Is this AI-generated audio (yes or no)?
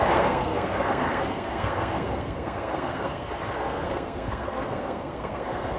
yes